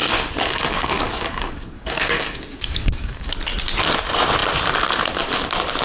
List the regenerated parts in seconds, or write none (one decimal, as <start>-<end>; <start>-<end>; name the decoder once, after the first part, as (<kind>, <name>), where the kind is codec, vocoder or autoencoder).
0.0-3.3 (codec, DAC)